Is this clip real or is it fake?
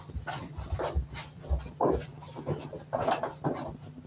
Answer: real